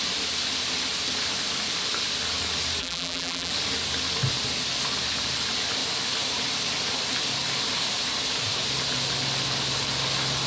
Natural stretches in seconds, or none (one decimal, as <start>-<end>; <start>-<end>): 0.0-2.8; 3.5-10.5

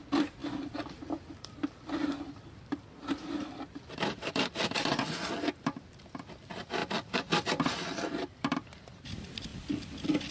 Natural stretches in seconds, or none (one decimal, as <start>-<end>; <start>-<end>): none

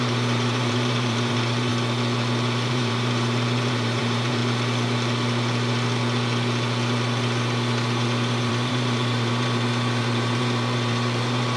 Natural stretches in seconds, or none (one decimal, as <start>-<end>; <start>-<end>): 1.7-2.7; 4.4-8.5

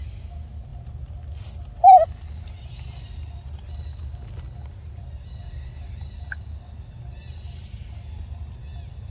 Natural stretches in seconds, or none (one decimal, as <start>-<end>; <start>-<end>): 0.0-9.1

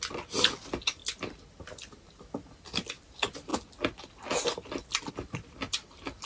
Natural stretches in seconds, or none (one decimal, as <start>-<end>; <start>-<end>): 0.0-6.2

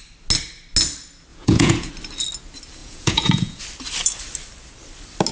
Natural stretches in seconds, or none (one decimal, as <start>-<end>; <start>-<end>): 0.0-1.3; 1.9-2.8; 3.6-5.3

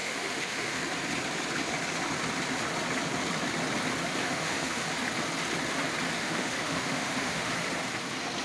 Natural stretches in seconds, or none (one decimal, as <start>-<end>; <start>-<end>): 0.8-4.2; 4.9-6.2; 7.5-8.4

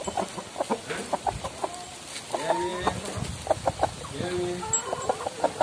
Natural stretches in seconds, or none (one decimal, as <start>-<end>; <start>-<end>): 0.0-5.6